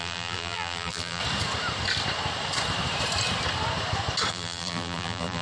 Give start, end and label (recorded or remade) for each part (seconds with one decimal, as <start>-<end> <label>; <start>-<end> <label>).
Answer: 0.0-1.2 remade; 1.2-4.3 recorded; 4.3-5.4 remade